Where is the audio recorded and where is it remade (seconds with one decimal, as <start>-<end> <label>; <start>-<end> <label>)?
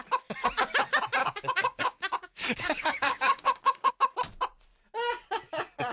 0.0-1.2 recorded; 1.2-3.9 remade; 3.9-5.9 recorded